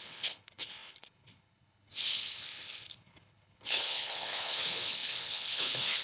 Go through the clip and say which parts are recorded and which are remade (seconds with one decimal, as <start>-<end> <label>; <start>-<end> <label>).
0.0-6.0 remade